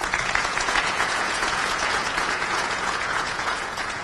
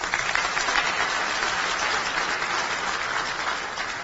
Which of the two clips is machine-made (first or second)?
first